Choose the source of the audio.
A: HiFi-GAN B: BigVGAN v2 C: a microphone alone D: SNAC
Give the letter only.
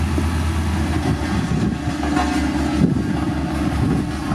C